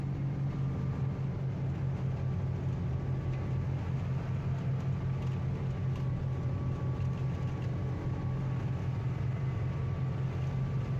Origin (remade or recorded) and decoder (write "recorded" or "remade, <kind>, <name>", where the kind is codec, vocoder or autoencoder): recorded